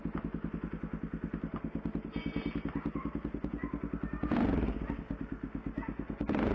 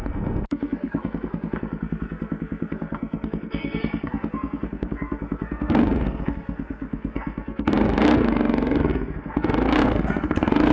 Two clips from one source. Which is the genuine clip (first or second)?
first